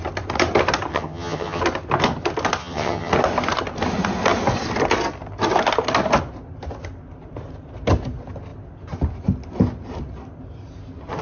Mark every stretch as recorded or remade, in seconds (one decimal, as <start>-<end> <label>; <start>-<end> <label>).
0.0-0.9 recorded; 0.9-1.6 remade; 1.6-2.6 recorded; 2.6-3.1 remade; 3.1-11.2 recorded